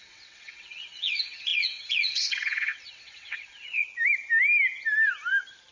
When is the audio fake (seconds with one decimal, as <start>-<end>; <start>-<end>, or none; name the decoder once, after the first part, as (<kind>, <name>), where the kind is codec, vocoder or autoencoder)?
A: 0.0-3.8 (vocoder, WaveNeXt)

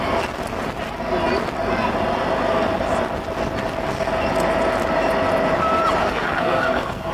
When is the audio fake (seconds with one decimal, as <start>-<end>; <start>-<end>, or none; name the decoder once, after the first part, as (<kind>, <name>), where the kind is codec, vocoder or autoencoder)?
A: 6.0-7.1 (codec, SNAC)

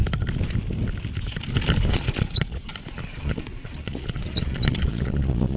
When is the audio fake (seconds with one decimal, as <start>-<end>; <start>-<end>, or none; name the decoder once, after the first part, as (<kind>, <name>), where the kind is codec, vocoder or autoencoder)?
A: 1.9-2.7 (vocoder, Vocos); 3.2-5.6